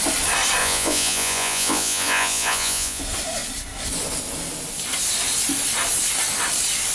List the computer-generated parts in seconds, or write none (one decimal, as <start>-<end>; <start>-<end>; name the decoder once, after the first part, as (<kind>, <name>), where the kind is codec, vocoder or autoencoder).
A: 0.6-3.0 (vocoder, Vocos)

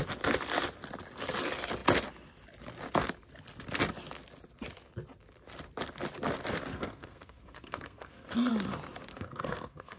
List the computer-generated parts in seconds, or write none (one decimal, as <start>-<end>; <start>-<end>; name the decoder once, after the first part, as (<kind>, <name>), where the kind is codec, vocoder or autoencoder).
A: 6.7-8.5 (codec, SNAC); 9.1-10.0

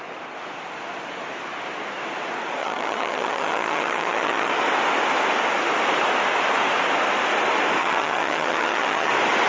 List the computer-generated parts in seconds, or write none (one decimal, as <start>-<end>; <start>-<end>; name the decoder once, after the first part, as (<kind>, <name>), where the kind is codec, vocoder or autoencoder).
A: 2.6-4.5 (vocoder, HiFi-GAN); 7.8-9.1

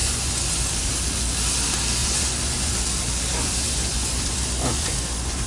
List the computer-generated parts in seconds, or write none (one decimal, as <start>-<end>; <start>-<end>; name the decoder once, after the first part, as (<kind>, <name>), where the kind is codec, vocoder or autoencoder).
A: 0.0-0.9 (vocoder, Vocos); 2.0-2.7; 3.3-5.5

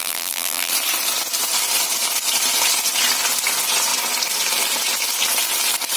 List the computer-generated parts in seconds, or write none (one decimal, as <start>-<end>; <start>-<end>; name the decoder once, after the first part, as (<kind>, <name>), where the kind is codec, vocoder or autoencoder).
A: 0.0-0.7 (vocoder, BigVGAN v2)

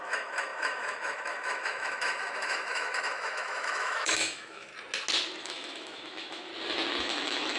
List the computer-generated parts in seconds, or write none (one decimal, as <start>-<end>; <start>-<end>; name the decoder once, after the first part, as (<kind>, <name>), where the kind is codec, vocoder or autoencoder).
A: 0.0-4.7 (autoencoder, DAC-VAE); 5.4-6.5; 7.0-7.6